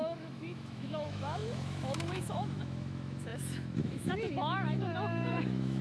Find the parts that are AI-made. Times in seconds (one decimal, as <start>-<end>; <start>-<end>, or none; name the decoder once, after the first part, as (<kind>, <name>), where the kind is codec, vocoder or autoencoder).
0.0-5.8 (autoencoder, DAC-VAE)